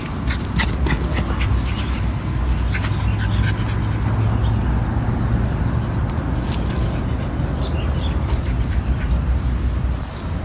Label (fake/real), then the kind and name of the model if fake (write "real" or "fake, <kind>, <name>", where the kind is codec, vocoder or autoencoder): real